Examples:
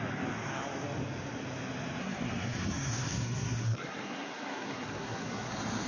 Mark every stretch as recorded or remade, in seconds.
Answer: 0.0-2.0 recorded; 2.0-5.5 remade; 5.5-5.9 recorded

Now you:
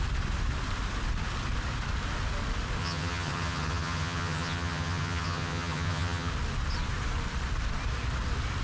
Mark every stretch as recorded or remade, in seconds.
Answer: 0.0-2.8 recorded; 2.8-6.3 remade; 6.3-8.6 recorded

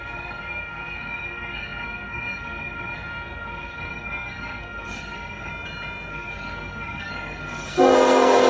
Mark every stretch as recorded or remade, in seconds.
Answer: 0.0-5.5 remade; 5.5-6.1 recorded; 6.1-8.5 remade

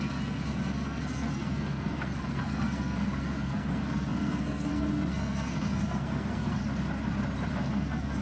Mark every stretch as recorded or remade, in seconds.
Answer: 0.0-6.6 remade; 6.6-7.5 recorded; 7.5-8.2 remade

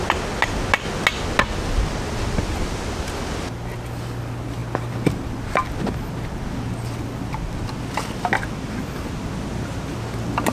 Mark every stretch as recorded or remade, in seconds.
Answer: 0.0-10.5 recorded

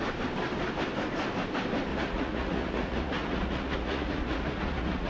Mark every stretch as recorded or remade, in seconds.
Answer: 0.0-1.9 recorded; 1.9-5.1 remade

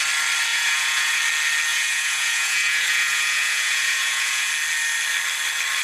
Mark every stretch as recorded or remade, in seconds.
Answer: 0.0-0.5 recorded; 0.5-1.2 remade; 1.2-1.7 recorded; 1.7-4.5 remade; 4.5-5.8 recorded

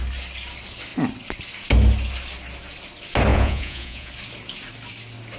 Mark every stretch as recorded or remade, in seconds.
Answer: 0.0-3.3 recorded; 3.3-4.1 remade; 4.1-5.4 recorded